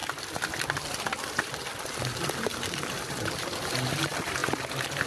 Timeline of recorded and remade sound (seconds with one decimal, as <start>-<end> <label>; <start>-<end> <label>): 0.0-5.1 recorded